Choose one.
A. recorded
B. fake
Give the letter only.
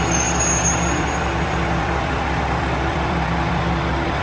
B